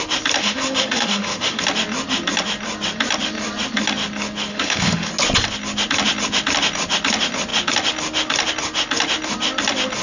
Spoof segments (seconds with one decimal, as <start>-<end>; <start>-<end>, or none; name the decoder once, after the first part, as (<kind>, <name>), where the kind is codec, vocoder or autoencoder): 0.4-1.6 (autoencoder, DAC-VAE); 4.5-5.1

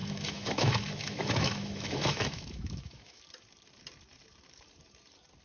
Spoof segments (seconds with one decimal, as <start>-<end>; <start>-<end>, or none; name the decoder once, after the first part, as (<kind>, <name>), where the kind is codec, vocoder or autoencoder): 0.0-3.2 (autoencoder, DAC-VAE)

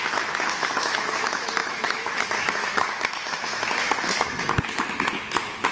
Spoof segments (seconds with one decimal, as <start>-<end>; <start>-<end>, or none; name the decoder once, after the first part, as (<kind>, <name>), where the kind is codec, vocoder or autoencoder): 0.0-5.7 (autoencoder, DAC-VAE)

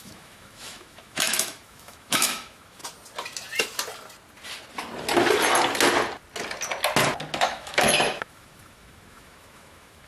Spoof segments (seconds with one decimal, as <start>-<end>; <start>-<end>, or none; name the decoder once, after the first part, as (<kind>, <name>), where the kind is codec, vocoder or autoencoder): 0.0-2.8 (autoencoder, DAC-VAE); 7.4-10.1